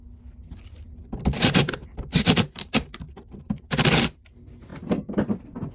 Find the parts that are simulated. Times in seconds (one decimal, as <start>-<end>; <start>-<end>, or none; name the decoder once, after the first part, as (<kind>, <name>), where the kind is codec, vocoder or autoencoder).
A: 1.0-3.7 (vocoder, BigVGAN v2)